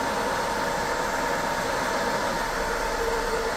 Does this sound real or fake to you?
real